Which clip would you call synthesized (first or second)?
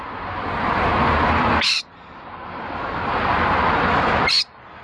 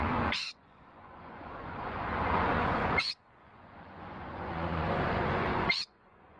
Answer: second